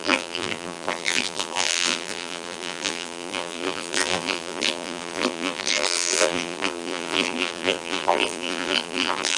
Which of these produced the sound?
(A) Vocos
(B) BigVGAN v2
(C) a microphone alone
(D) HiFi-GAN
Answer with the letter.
B